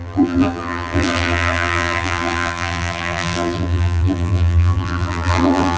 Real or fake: fake